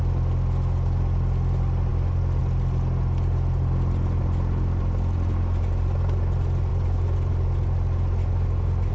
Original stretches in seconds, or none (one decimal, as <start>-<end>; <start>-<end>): 0.0-8.9